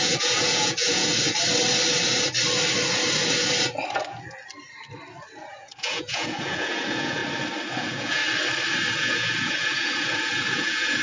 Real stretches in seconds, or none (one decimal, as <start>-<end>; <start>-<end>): 1.1-5.5; 7.2-7.7; 8.2-8.9